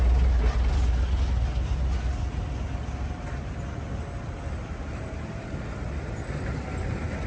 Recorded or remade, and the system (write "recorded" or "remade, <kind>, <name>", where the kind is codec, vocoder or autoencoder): recorded